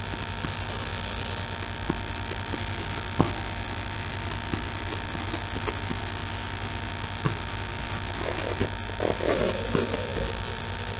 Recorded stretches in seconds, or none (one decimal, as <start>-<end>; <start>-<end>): 0.0-11.0